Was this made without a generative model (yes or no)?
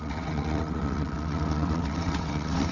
no